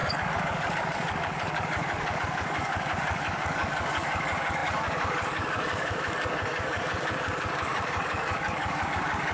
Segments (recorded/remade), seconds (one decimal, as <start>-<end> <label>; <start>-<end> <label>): 0.0-9.3 remade